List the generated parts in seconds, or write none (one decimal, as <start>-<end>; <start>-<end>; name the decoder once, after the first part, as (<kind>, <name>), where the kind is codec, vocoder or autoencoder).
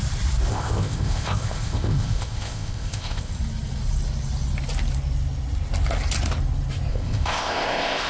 0.5-3.3 (codec, ZipCodec); 6.9-8.1